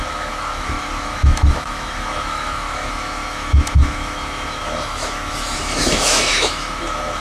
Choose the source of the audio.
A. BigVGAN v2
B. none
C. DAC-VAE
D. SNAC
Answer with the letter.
C